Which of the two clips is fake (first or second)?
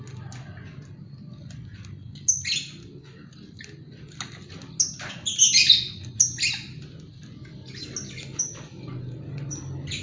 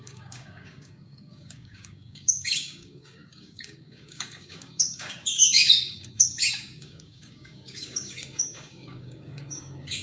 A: second